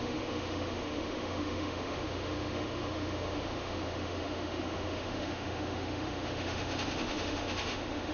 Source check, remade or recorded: remade